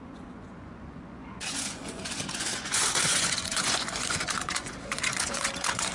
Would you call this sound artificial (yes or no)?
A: yes